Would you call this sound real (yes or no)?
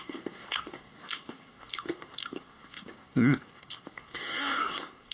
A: no